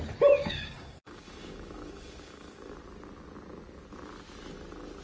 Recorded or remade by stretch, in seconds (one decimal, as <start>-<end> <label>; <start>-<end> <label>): 0.0-0.4 recorded; 0.4-2.7 remade; 2.7-5.0 recorded